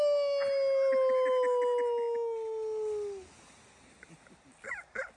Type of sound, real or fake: real